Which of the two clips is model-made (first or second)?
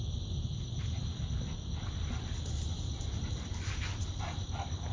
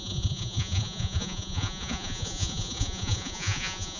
second